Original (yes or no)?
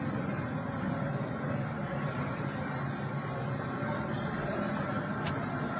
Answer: yes